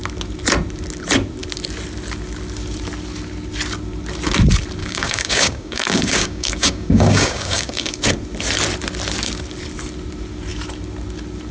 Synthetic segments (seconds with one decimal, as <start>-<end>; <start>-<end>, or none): 4.8-8.0